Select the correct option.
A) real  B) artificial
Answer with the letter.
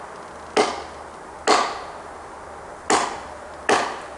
A